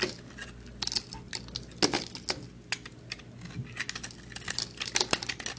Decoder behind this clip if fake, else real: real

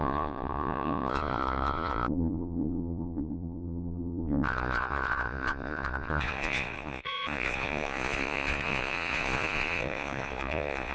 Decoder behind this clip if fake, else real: fake, vocoder, Vocos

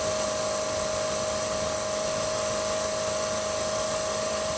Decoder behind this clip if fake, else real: real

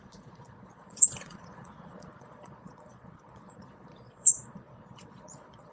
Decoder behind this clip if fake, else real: fake, vocoder, Vocos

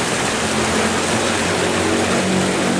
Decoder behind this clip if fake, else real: real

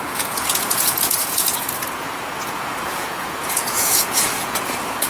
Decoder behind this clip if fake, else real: fake, vocoder, Vocos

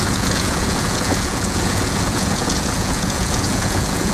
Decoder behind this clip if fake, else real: fake, vocoder, Vocos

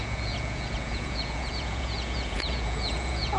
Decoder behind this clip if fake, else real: fake, vocoder, Vocos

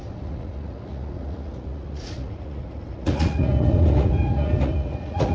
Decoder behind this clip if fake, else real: fake, vocoder, Vocos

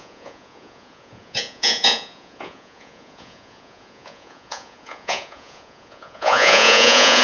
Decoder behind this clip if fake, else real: fake, vocoder, Vocos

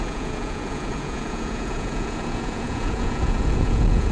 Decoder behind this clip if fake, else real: fake, vocoder, Vocos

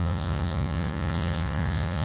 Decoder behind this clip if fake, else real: fake, vocoder, Vocos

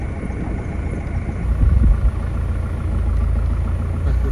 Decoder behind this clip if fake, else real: real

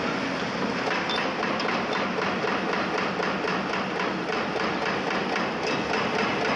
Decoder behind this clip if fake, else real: real